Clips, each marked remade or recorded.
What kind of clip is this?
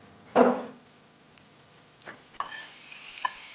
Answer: remade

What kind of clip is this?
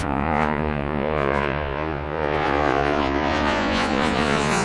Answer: remade